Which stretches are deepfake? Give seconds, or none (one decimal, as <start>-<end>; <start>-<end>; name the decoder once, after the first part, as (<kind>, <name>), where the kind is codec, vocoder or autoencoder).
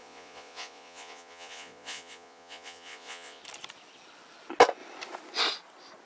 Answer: 0.0-3.4 (vocoder, Vocos)